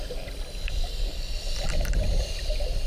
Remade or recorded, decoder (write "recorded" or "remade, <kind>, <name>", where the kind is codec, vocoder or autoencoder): recorded